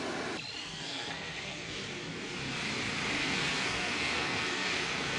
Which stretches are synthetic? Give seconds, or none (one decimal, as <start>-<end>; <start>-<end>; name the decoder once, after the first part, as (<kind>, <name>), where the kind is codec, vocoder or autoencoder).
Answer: 0.6-1.7 (codec, SNAC); 3.2-5.2